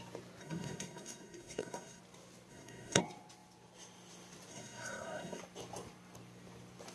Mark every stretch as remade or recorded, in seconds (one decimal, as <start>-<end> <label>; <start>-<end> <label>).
0.0-0.4 recorded; 0.4-2.0 remade; 2.0-2.5 recorded; 2.5-3.0 remade; 3.0-4.5 recorded; 4.5-5.4 remade; 5.4-6.9 recorded